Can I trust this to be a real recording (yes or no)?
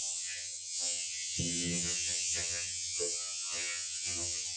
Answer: no